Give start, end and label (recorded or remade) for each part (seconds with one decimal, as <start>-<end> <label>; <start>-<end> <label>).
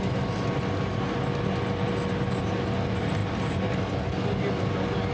0.0-5.1 recorded